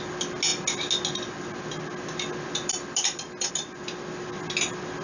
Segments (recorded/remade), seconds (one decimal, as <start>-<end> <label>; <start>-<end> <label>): 0.0-5.0 recorded